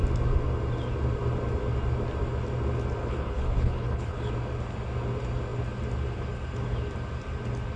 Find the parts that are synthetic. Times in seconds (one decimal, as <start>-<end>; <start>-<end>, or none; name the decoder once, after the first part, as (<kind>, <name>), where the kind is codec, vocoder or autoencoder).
3.0-4.3 (codec, HILCodec)